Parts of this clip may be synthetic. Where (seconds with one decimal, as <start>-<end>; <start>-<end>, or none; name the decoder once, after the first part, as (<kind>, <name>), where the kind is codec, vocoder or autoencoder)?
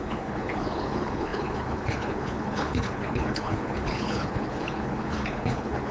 0.0-5.9 (codec, HILCodec)